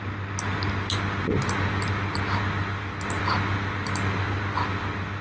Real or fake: real